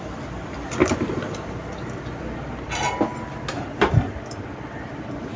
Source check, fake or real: real